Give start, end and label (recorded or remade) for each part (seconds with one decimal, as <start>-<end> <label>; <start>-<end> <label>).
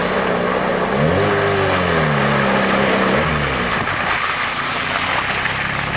0.0-6.0 recorded